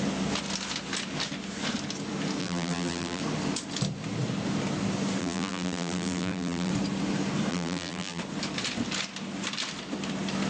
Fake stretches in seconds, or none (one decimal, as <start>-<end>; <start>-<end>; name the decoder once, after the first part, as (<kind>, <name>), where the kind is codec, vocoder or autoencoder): 2.4-3.2 (vocoder, BigVGAN v2); 5.2-6.7; 7.5-8.2